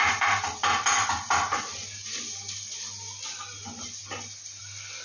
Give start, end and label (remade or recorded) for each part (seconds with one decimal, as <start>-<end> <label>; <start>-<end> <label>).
0.0-5.0 recorded